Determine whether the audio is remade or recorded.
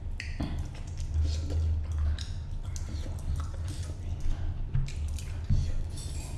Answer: recorded